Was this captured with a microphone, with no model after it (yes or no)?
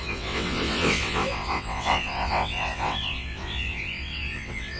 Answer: no